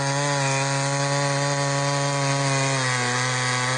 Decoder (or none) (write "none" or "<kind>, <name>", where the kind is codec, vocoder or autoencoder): none